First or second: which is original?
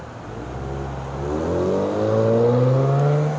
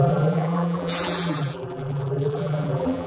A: first